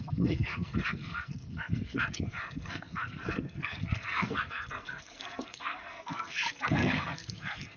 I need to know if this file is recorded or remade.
remade